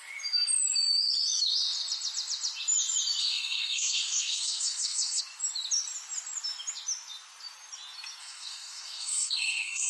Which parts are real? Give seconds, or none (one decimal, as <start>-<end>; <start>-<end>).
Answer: 0.0-3.2; 5.2-8.2